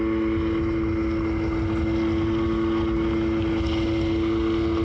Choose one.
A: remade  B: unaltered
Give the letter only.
B